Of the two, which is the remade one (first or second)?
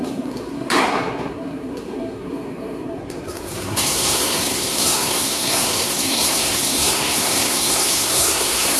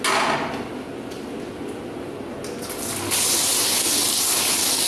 first